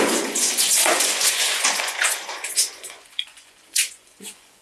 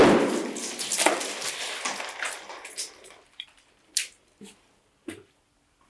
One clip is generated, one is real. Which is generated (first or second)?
first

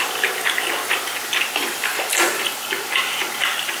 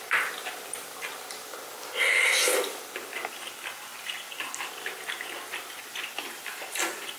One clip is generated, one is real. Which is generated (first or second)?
second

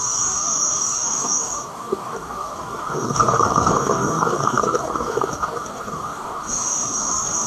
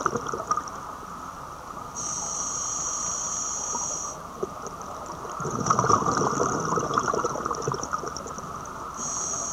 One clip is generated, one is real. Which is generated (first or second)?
first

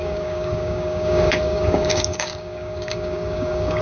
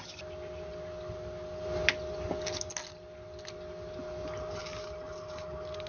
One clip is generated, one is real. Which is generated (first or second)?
first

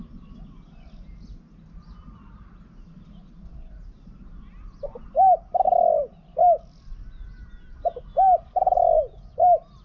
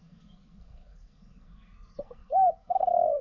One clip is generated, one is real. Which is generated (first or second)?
second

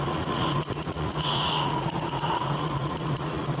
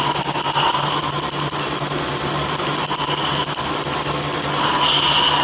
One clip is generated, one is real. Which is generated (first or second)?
first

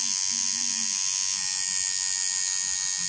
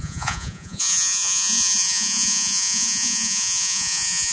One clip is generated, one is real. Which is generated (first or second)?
second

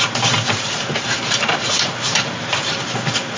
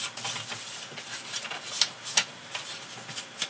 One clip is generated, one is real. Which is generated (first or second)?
first